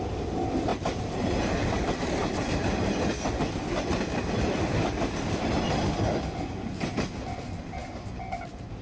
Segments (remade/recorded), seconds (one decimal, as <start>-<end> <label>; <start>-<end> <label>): 0.0-0.7 recorded; 0.7-2.9 remade; 2.9-7.8 recorded; 7.8-8.8 remade